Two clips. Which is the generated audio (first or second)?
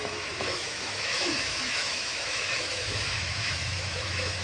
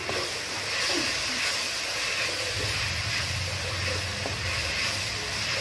first